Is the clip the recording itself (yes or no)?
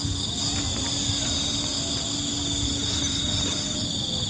yes